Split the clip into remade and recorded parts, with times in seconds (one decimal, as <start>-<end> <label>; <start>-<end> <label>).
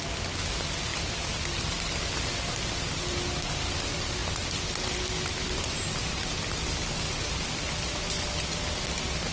0.0-9.3 recorded